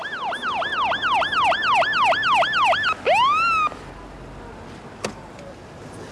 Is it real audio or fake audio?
real